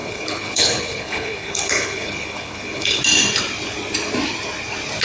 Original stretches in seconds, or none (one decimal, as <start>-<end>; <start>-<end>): 3.0-5.0